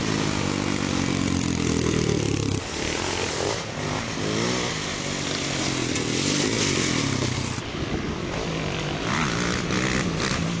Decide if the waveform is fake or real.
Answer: real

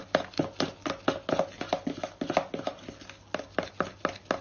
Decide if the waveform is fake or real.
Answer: real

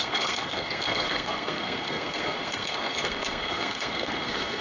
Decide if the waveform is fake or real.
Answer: fake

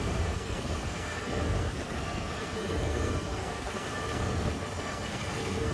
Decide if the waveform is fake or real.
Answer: fake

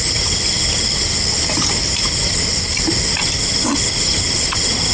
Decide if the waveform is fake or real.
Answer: real